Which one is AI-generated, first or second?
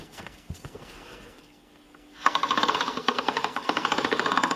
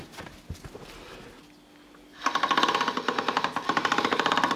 first